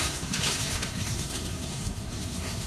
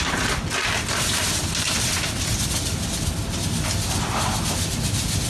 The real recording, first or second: second